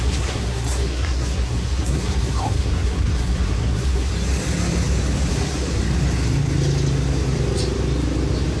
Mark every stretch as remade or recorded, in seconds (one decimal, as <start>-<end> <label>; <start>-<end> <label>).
0.0-4.1 remade; 4.1-5.3 recorded; 5.3-5.8 remade; 5.8-8.6 recorded